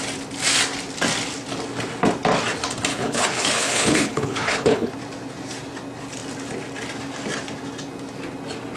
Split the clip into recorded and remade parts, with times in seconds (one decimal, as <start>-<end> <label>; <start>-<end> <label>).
0.0-2.9 recorded; 2.9-4.9 remade; 4.9-8.8 recorded